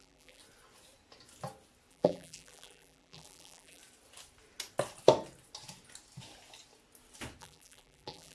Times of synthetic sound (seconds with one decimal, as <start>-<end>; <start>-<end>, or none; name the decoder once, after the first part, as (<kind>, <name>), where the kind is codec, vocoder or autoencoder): 0.0-0.4 (vocoder, BigVGAN v2); 1.9-3.8; 7.4-8.3